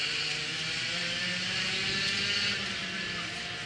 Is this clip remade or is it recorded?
recorded